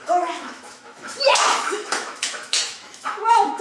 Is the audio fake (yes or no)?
yes